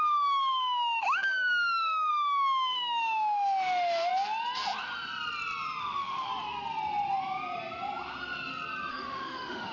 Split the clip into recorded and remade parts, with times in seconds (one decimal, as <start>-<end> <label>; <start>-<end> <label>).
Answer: 0.0-4.1 remade; 4.1-5.8 recorded; 5.8-6.3 remade; 6.3-8.9 recorded; 8.9-9.7 remade